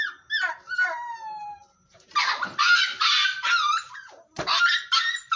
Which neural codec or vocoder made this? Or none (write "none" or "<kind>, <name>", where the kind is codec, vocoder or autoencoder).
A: none